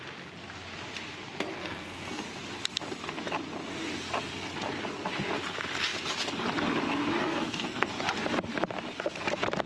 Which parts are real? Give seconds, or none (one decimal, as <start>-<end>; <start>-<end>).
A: 0.0-1.6; 2.2-7.2; 7.9-9.7